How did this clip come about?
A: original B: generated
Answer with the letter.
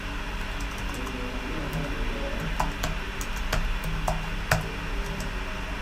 A